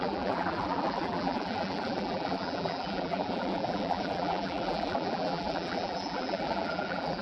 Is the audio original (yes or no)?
no